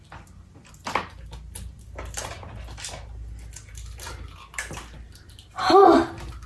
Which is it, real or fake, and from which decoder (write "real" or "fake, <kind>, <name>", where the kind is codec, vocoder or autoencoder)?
real